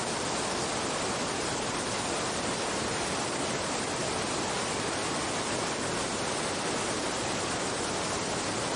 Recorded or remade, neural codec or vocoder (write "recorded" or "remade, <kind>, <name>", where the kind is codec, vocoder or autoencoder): recorded